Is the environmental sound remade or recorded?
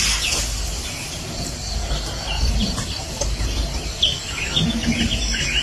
recorded